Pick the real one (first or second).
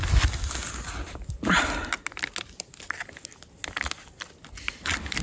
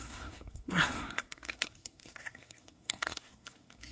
first